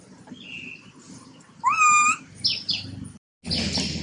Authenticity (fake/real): real